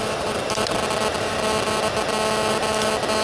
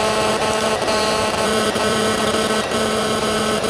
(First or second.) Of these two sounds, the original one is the first